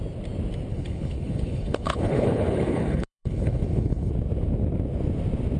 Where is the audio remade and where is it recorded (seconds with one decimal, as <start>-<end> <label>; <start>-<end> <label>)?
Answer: 0.0-0.7 recorded; 0.7-4.1 remade; 4.1-5.6 recorded